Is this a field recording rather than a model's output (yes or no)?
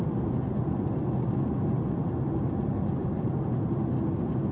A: yes